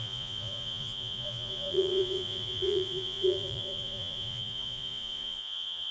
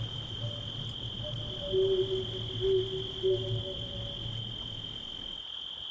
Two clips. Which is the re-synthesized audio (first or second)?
first